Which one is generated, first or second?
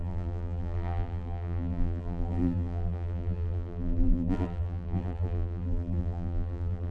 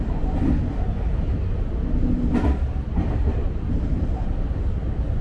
first